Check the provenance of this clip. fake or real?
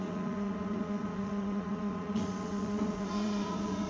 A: fake